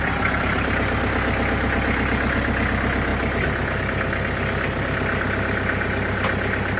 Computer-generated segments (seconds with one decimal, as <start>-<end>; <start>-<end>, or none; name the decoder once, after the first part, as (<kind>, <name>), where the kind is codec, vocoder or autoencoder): none